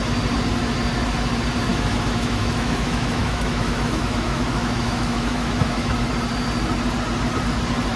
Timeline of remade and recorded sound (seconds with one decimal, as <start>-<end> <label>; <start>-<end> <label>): 0.0-1.7 recorded; 1.7-6.1 remade; 6.1-8.0 recorded